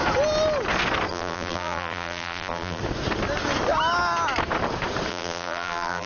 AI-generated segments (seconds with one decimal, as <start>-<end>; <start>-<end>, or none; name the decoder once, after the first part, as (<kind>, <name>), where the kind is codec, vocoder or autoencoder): 1.1-2.8 (vocoder, BigVGAN v2); 5.1-6.1